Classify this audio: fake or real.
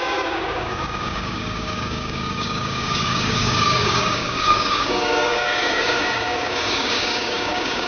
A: fake